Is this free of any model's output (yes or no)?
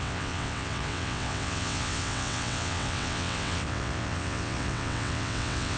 no